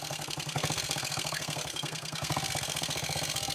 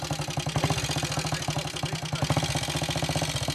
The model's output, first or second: first